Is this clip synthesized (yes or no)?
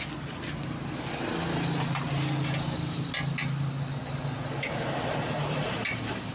no